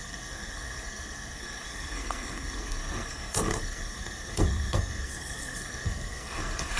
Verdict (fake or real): fake